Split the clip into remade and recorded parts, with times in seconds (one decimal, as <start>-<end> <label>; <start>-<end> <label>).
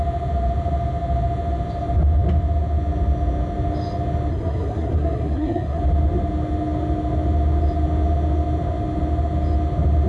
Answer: 0.0-4.3 recorded; 4.3-5.8 remade; 5.8-10.1 recorded